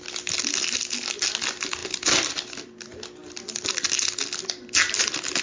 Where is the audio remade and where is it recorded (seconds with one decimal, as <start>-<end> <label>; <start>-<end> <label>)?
0.0-5.4 recorded